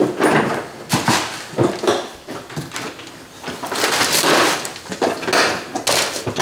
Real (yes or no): yes